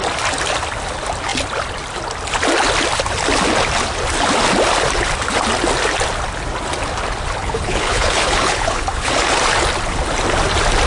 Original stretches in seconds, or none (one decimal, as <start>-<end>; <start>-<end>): 0.0-7.4; 9.1-10.9